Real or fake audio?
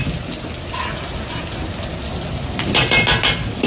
real